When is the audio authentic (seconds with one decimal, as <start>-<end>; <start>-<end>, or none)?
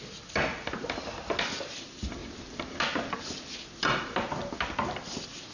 0.0-5.5